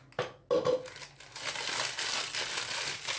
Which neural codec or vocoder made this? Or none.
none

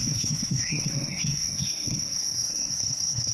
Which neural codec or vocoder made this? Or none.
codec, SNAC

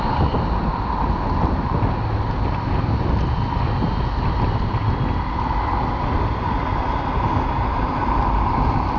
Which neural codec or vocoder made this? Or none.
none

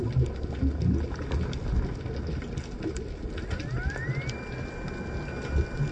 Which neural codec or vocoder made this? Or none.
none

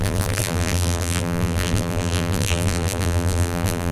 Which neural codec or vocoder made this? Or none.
vocoder, BigVGAN v2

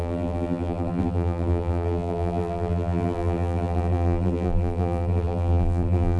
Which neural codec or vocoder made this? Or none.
vocoder, BigVGAN v2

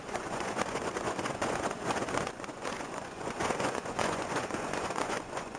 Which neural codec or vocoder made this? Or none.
vocoder, Vocos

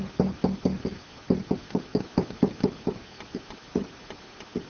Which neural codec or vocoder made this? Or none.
none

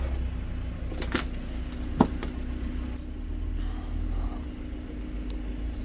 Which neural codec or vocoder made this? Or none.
none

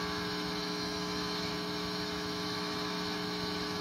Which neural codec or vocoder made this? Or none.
autoencoder, DAC-VAE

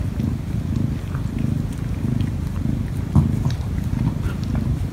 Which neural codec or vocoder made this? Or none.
none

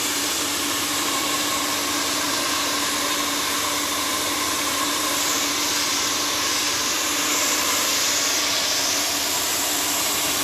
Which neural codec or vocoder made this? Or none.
vocoder, BigVGAN v2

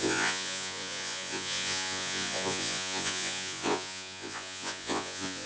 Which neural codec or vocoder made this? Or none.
vocoder, Vocos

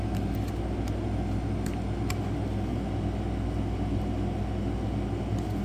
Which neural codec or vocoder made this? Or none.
none